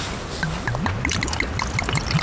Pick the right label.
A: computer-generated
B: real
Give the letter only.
B